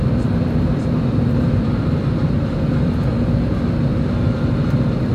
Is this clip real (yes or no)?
no